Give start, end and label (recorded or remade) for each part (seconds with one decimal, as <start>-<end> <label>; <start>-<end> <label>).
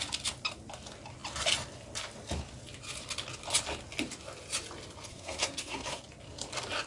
0.0-5.1 recorded; 5.1-6.0 remade; 6.0-6.9 recorded